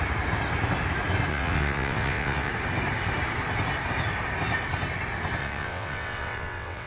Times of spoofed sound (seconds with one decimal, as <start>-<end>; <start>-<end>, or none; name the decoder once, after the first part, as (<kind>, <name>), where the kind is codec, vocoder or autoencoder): 1.3-2.5 (vocoder, WaveNeXt); 5.4-6.9